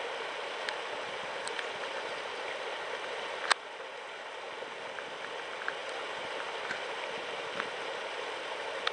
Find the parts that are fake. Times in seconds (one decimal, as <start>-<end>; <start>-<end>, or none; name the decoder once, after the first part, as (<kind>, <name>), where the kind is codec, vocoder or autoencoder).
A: none